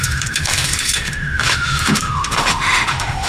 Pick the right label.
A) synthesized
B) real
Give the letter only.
A